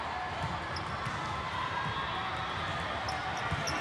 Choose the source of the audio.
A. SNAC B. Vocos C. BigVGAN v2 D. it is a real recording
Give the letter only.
D